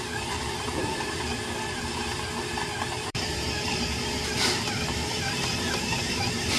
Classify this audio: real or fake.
fake